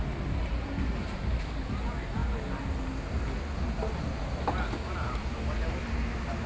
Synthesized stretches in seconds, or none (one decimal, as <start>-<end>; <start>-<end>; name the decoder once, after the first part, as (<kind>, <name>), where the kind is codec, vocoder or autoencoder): none